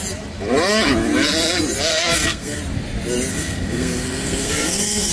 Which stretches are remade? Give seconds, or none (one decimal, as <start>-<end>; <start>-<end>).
1.9-2.6; 3.3-5.1